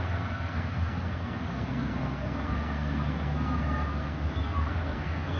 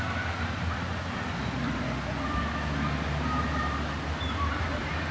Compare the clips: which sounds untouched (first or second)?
second